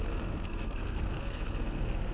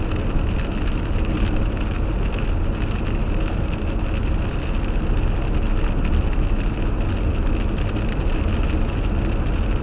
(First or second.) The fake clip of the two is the first